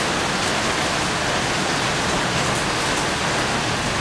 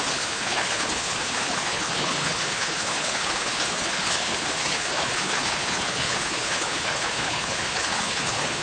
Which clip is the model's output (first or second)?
second